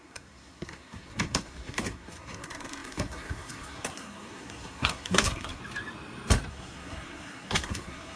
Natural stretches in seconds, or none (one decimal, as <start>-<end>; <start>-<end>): 5.6-6.5